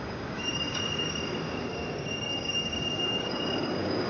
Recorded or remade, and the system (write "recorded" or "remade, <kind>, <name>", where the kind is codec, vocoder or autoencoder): remade, codec, DAC